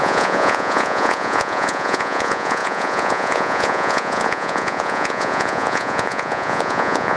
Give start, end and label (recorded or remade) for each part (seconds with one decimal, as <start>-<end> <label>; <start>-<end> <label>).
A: 0.0-7.2 remade